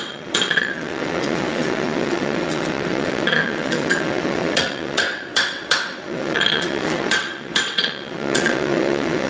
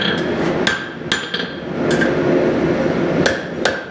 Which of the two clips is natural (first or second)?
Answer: second